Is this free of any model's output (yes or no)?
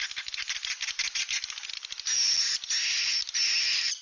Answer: yes